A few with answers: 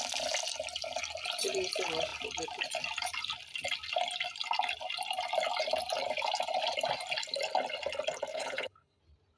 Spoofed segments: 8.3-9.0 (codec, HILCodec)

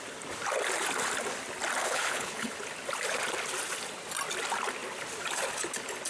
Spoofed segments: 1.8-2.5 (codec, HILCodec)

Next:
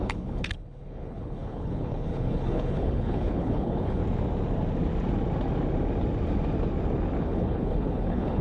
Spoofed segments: 0.0-4.0 (codec, HILCodec); 7.2-8.4

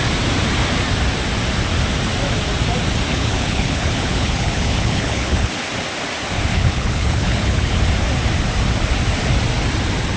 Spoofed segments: 3.1-5.5 (codec, HILCodec); 6.5-7.8

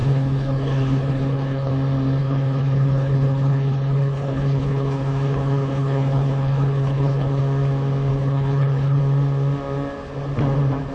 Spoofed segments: 0.0-1.7 (codec, HILCodec); 2.2-7.4; 8.1-9.0

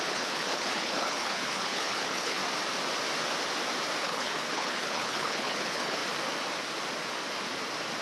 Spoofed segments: 0.0-2.4 (codec, HILCodec); 4.0-6.0